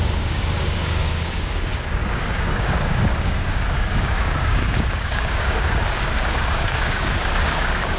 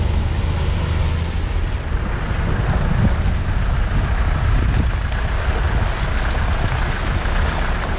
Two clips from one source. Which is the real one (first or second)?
second